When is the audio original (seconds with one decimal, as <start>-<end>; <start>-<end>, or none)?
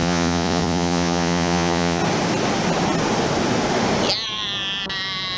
2.0-5.4